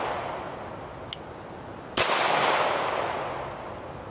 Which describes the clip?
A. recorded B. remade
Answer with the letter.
A